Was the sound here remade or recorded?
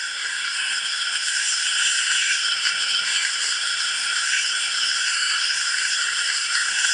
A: remade